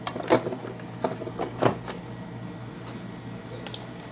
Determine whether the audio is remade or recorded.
recorded